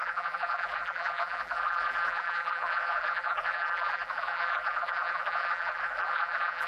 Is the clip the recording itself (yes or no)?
no